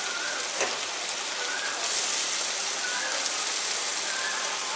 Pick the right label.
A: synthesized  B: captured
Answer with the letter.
B